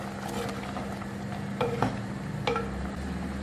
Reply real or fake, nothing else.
real